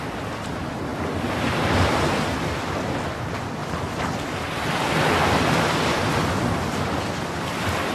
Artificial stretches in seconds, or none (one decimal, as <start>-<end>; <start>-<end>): none